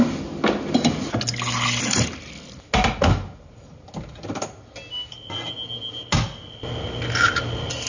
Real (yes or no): yes